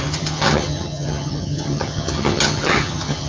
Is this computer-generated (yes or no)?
yes